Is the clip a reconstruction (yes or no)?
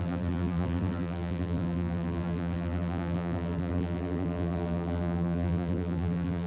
yes